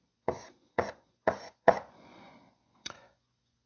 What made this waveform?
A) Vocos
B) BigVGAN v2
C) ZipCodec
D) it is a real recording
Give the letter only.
A